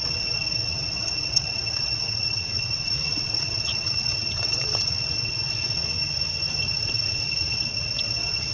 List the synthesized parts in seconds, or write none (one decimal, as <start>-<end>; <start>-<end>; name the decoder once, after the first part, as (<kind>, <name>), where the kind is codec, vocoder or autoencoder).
0.0-5.8 (vocoder, WaveNeXt); 6.7-8.5